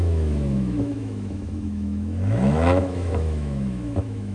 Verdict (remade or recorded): remade